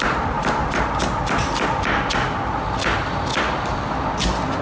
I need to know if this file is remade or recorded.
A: recorded